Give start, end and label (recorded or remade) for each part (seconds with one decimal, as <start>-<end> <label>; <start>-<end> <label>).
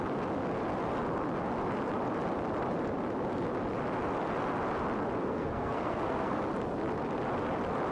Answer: 0.0-5.2 recorded; 5.2-6.4 remade; 6.4-7.9 recorded